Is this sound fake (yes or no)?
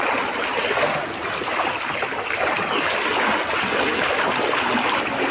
yes